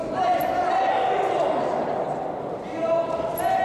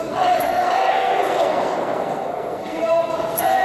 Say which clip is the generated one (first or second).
second